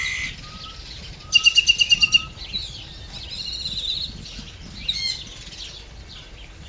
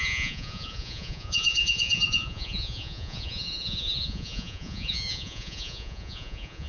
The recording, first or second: first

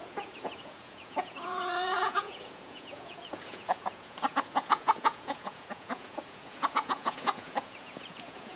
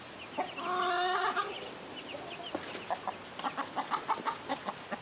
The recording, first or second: second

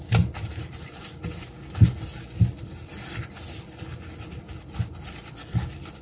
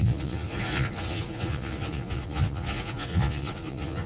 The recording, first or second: first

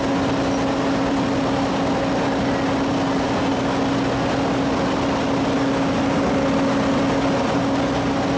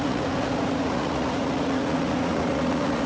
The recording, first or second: first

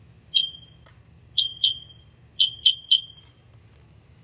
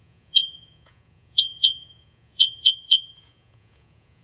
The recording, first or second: first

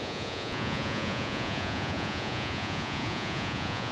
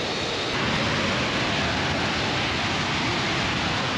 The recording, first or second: second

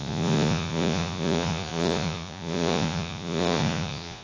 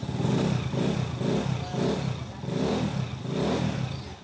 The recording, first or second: second